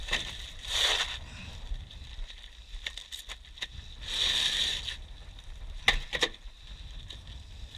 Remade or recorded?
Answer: recorded